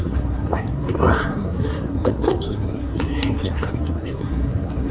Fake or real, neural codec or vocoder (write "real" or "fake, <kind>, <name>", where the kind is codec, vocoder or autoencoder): fake, codec, SNAC